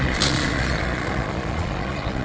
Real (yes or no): no